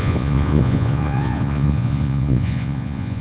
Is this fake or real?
fake